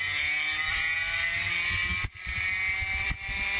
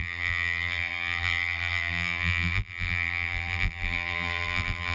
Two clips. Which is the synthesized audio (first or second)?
second